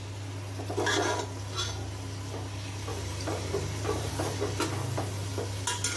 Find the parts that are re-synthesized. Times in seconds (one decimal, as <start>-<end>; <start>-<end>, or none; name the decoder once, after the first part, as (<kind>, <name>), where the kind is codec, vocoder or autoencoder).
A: 2.9-4.1 (vocoder, BigVGAN v2)